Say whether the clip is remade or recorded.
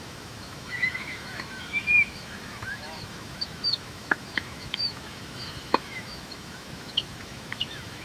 remade